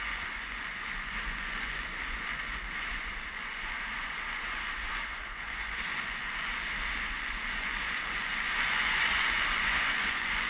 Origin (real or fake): fake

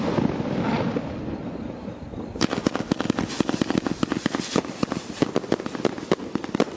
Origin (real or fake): real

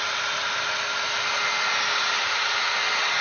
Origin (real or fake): real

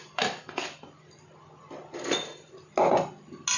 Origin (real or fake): real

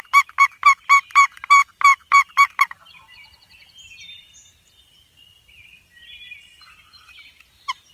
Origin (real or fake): real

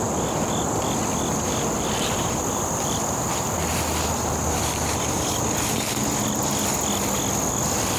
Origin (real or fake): fake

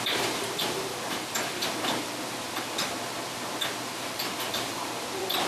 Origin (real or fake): fake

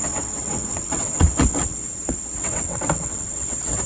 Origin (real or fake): fake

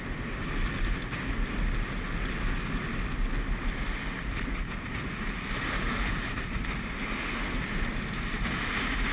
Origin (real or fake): real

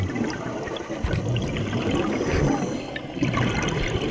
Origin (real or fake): real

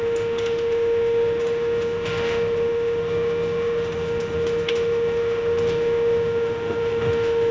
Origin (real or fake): fake